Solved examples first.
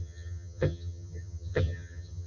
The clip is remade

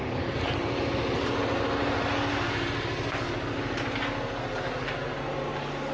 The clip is recorded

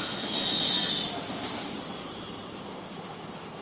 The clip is recorded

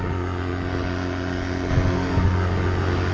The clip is recorded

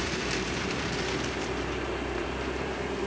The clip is remade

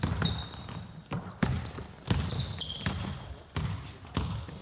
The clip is recorded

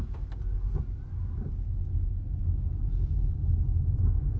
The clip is recorded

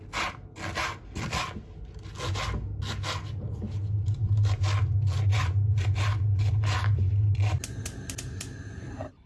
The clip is recorded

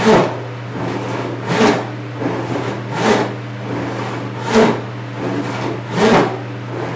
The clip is recorded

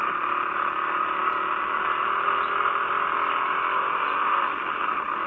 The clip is recorded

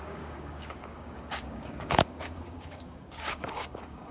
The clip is remade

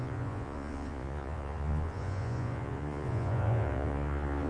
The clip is remade